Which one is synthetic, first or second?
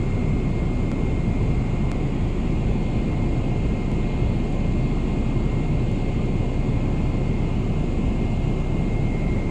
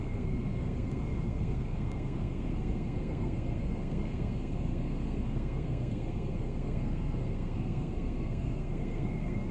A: second